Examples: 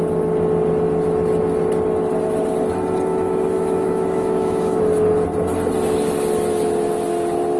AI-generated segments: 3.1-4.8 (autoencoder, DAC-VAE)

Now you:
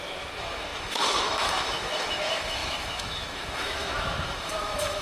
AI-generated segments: 0.0-5.0 (autoencoder, DAC-VAE)

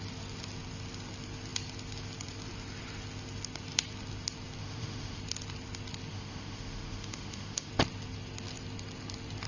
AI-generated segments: 4.6-5.2 (autoencoder, DAC-VAE); 6.1-7.7

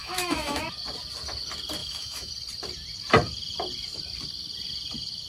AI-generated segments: 0.0-0.6 (autoencoder, DAC-VAE); 1.8-2.3

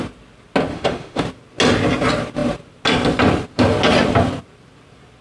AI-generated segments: 0.7-1.2 (autoencoder, DAC-VAE)